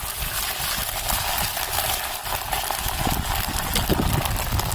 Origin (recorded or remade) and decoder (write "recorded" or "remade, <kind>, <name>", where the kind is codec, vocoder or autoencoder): recorded